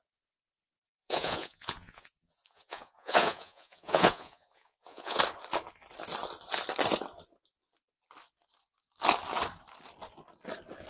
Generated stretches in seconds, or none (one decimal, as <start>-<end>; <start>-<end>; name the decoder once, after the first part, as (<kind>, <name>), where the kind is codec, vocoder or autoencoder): 0.5-5.2 (vocoder, Vocos)